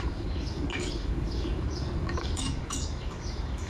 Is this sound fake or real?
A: fake